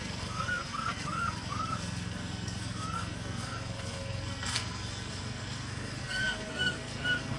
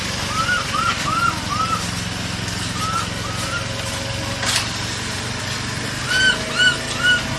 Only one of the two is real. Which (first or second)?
second